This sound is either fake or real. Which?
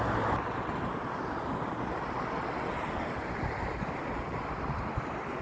real